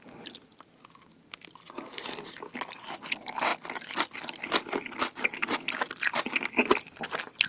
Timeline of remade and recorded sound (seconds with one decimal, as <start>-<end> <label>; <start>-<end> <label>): 0.0-7.5 recorded